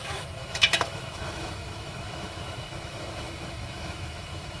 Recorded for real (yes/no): no